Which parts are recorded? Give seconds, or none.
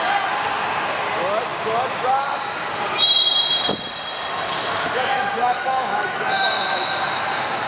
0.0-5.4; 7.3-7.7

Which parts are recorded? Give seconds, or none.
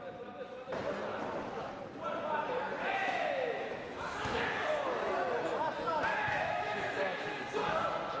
0.0-1.1; 1.7-2.8; 4.5-6.1; 7.4-8.2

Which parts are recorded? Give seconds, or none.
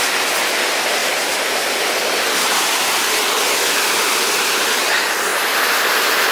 0.0-6.3